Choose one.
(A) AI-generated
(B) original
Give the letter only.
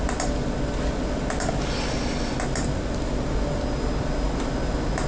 B